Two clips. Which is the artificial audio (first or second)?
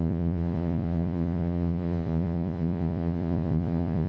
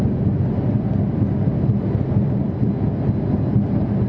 first